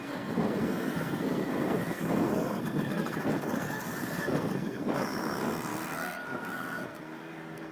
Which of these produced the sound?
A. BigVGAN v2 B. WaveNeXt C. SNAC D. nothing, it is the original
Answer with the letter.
C